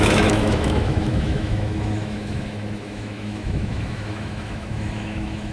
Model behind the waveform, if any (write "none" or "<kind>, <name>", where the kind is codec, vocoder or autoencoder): autoencoder, DAC-VAE